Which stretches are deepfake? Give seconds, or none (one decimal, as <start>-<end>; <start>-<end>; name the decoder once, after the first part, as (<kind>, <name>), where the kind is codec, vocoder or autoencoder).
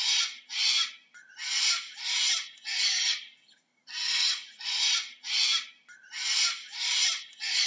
6.7-7.7 (vocoder, BigVGAN v2)